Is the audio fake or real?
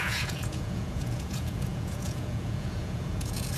fake